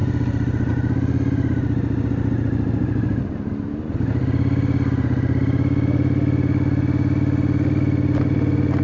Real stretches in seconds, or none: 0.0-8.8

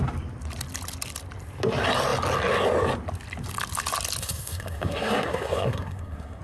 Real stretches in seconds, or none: 0.0-4.2

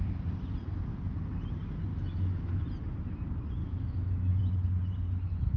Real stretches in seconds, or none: 0.0-1.9; 2.6-3.6; 4.4-5.6

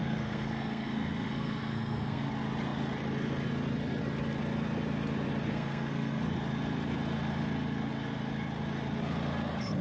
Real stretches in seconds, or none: 2.3-5.5; 6.2-9.8